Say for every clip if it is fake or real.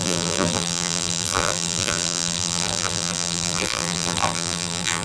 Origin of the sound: fake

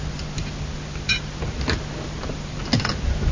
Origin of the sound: real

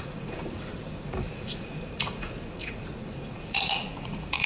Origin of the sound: fake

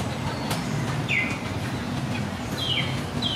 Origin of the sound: real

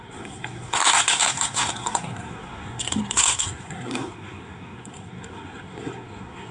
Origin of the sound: fake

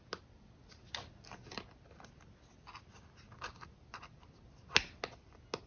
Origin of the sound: real